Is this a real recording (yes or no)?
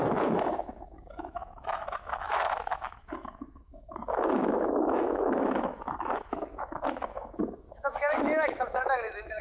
no